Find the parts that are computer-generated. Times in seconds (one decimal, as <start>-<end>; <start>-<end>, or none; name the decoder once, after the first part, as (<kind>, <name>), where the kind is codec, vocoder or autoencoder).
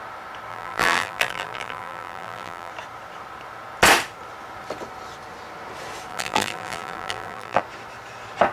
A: 0.5-2.7 (vocoder, BigVGAN v2); 6.1-7.6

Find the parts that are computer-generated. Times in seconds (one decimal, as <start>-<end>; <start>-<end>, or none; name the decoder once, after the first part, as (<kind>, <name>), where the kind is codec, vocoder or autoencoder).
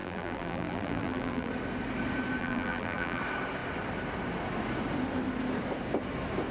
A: 0.0-1.5 (vocoder, BigVGAN v2); 2.4-3.2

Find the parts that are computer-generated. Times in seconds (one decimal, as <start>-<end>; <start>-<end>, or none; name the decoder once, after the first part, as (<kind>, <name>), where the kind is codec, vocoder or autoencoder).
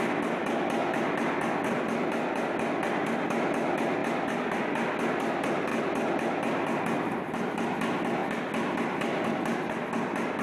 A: none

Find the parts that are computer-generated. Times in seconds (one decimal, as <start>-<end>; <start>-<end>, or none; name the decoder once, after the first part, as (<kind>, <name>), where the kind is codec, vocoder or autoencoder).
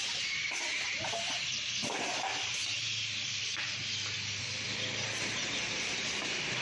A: 0.0-2.3 (vocoder, BigVGAN v2)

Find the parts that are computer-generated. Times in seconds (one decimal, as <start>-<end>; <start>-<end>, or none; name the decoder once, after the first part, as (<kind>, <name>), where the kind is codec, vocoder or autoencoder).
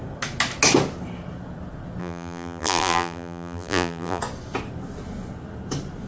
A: 2.0-4.2 (vocoder, BigVGAN v2)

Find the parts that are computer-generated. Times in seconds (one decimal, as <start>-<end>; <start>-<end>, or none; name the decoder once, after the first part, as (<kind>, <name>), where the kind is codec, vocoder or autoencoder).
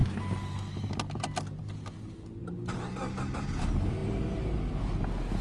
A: none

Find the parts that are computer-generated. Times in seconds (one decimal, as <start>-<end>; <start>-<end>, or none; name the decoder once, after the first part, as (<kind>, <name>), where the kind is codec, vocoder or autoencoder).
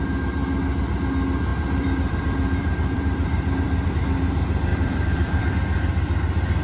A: 1.5-3.9 (vocoder, BigVGAN v2); 4.7-5.5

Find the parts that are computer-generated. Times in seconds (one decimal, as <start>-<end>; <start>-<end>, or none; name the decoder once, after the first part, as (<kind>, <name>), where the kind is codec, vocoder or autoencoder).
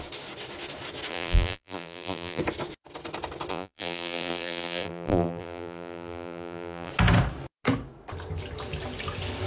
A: 1.1-2.4 (vocoder, BigVGAN v2); 3.5-6.9